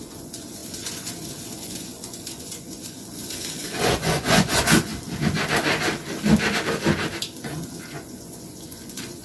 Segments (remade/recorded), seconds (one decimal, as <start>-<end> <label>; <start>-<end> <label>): 0.0-4.9 remade; 4.9-7.4 recorded; 7.4-9.2 remade